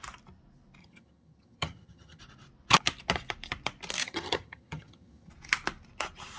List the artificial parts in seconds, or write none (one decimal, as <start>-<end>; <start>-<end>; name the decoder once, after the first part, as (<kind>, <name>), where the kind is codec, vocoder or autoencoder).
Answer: 0.8-2.2 (vocoder, HiFi-GAN); 4.0-5.3